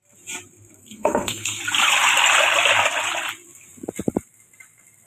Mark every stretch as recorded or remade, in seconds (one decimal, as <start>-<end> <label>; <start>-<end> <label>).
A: 0.0-0.8 recorded; 0.8-1.6 remade; 1.6-5.1 recorded